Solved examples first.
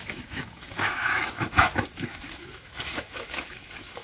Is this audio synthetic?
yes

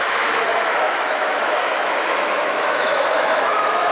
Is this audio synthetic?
yes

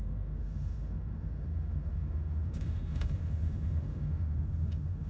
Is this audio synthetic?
yes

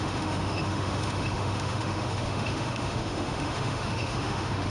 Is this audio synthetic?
yes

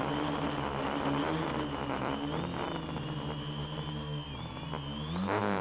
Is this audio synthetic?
no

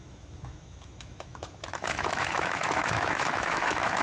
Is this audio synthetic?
yes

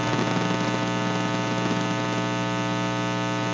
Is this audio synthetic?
no